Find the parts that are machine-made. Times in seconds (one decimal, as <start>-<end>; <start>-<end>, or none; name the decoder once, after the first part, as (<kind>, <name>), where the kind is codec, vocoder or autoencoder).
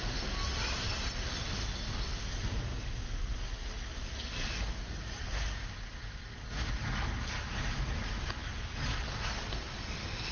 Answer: 0.9-1.5 (vocoder, BigVGAN v2); 8.4-9.2